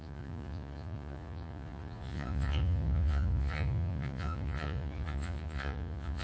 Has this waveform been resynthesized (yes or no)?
yes